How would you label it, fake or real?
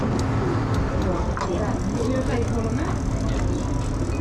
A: real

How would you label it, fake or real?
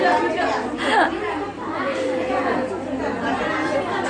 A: real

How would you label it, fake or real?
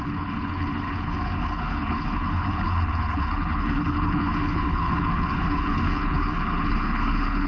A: fake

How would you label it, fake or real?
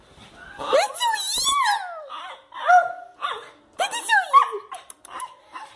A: real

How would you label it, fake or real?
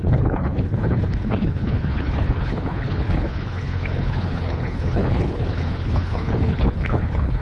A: fake